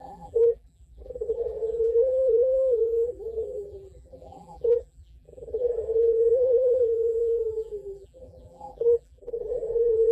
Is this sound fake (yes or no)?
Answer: yes